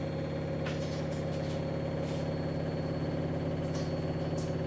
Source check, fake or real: real